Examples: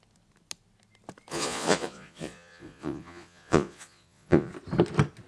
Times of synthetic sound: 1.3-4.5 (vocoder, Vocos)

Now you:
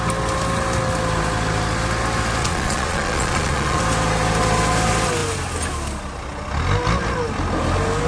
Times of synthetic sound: 2.4-3.8 (vocoder, Vocos)

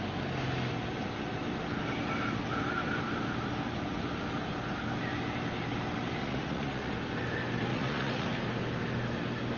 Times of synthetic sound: 6.2-6.9 (vocoder, Vocos); 7.7-8.3

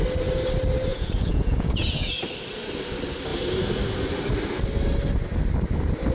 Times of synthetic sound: 0.9-2.1 (vocoder, Vocos)

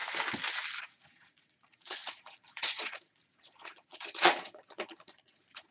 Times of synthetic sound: 0.8-5.7 (vocoder, Vocos)

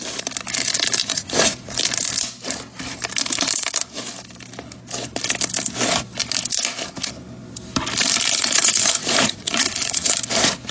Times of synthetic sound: 1.0-1.8 (vocoder, Vocos); 8.4-10.1

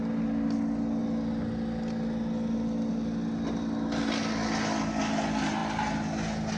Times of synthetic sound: none

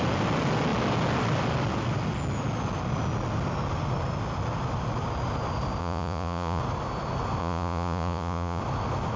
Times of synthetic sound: 5.8-6.6 (vocoder, Vocos); 7.4-8.6